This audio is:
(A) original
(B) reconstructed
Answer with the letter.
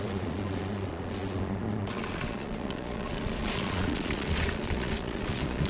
B